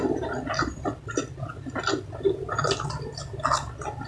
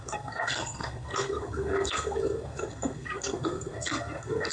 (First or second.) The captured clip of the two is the first